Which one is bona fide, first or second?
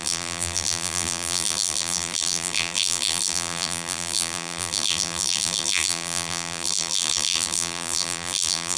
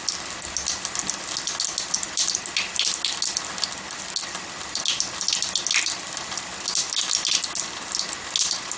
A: second